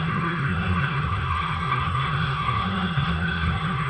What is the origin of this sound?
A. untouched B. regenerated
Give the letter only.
B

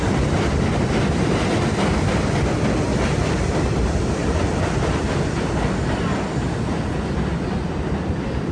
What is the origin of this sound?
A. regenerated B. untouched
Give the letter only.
B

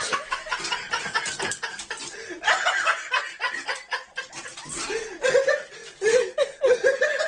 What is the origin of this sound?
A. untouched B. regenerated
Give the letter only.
A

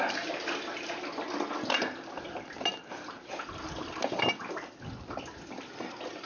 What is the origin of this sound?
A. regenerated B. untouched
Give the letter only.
B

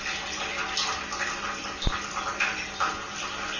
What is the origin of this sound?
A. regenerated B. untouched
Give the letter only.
B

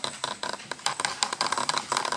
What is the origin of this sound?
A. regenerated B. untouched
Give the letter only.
A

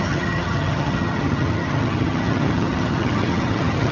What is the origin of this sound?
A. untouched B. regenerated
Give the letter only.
B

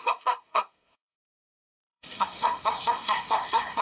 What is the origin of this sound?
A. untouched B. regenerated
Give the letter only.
B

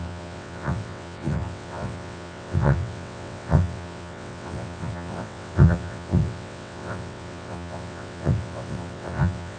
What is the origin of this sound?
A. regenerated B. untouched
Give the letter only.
A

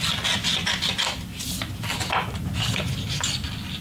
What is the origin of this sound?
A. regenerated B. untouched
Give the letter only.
B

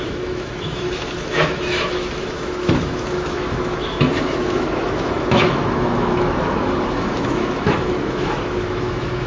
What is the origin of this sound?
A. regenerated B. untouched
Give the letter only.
A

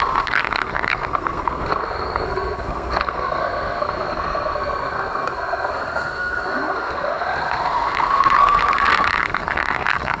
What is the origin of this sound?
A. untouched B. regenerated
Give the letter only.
B